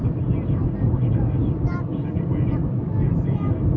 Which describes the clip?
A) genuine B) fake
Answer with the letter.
A